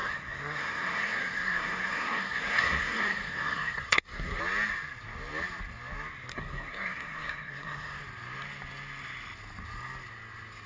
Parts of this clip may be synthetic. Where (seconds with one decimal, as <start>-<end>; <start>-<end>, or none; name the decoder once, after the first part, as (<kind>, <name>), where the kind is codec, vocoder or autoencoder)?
0.0-4.4 (codec, SNAC); 6.3-8.0